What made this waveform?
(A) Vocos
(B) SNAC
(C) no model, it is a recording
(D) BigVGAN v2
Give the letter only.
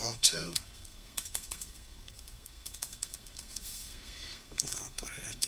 B